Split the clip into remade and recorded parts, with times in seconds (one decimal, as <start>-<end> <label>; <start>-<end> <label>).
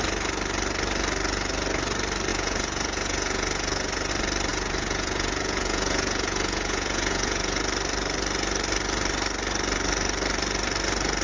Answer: 0.0-2.3 recorded; 2.3-4.1 remade; 4.1-4.5 recorded; 4.5-7.6 remade; 7.6-11.2 recorded